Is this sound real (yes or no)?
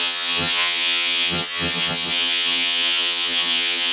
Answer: no